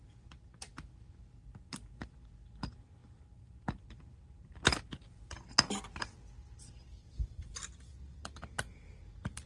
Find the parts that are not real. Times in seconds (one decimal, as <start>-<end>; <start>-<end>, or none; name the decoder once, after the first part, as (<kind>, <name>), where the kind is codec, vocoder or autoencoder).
none